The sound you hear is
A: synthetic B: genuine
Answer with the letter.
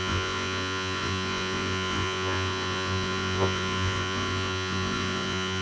A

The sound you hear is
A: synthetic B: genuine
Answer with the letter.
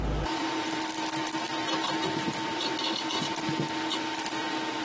B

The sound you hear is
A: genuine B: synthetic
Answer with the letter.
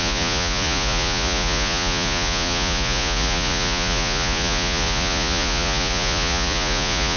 B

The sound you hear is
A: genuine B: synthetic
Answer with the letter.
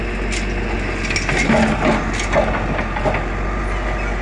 A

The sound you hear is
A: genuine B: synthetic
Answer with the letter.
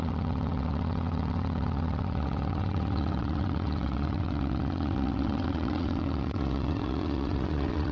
B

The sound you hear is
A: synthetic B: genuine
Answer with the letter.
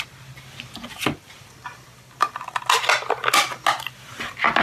B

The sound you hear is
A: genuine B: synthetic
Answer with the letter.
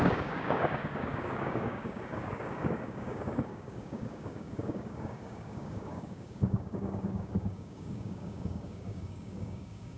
B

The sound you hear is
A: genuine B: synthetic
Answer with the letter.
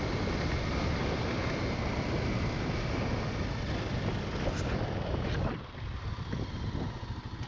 A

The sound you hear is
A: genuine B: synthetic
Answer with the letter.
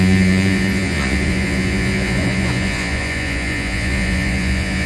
B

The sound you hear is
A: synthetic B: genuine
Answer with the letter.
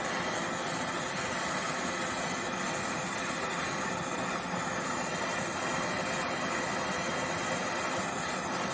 B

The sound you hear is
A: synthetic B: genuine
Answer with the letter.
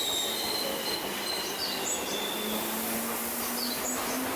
B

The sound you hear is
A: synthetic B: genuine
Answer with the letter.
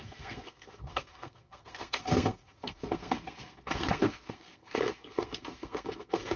A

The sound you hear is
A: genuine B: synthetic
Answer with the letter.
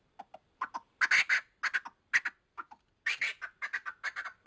A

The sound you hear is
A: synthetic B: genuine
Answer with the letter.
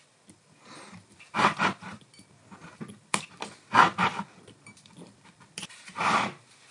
A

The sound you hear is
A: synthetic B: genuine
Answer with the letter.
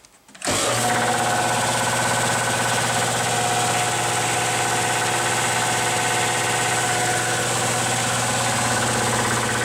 B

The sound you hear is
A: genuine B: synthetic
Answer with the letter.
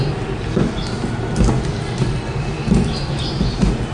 A